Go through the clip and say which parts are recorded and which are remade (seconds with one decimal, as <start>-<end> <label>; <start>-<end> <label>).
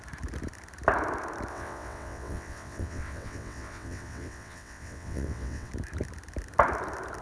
0.0-1.5 recorded; 1.5-5.7 remade; 5.7-7.2 recorded